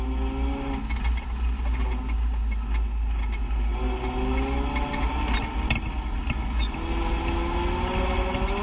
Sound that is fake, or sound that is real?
real